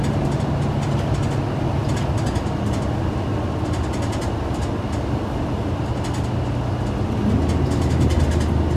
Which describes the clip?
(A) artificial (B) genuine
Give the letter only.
B